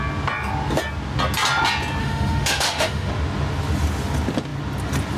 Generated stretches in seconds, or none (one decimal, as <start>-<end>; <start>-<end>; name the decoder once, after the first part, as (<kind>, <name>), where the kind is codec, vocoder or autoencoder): 2.0-3.1 (autoencoder, DAC-VAE)